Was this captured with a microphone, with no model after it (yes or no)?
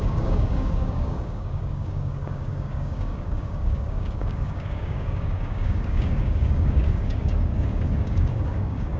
no